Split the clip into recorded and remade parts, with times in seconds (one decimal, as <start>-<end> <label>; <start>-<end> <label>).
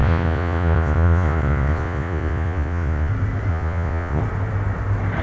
0.0-3.1 remade; 3.1-3.5 recorded; 3.5-4.2 remade; 4.2-5.2 recorded